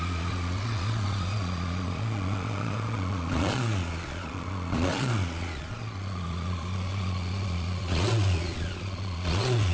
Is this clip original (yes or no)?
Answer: no